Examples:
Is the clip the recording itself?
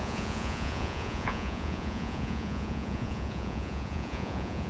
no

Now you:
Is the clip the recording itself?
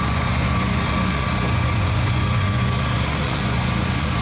no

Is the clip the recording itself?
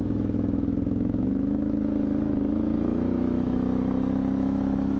no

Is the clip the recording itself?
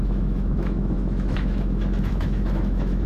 no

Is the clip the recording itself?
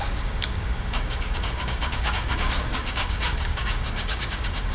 no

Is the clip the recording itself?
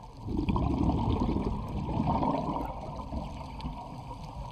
yes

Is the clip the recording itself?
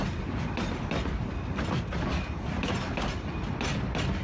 yes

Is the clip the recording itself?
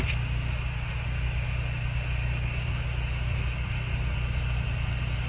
yes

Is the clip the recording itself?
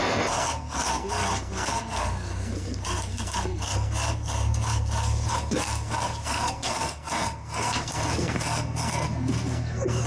no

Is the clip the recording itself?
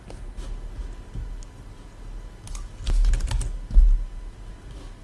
yes